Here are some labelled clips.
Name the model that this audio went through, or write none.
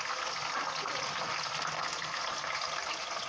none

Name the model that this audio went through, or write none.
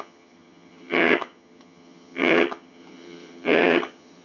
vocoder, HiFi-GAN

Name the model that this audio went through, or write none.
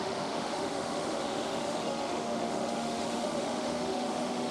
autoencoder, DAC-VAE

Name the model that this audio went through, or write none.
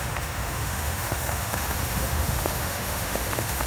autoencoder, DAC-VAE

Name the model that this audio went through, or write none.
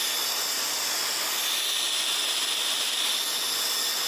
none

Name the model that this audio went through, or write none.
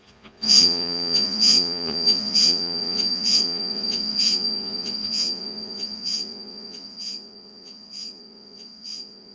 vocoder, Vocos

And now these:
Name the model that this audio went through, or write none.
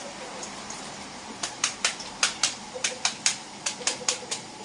vocoder, BigVGAN v2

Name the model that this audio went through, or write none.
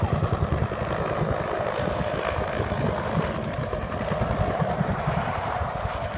none